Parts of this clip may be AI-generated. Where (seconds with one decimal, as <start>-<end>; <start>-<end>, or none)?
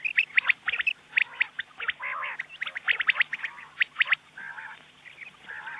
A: none